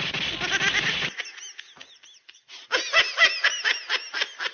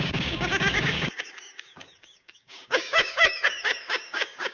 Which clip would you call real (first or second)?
first